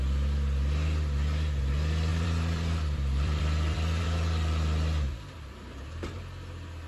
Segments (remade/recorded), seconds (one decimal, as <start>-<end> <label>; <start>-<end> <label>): 0.0-2.1 recorded; 2.1-6.2 remade; 6.2-6.9 recorded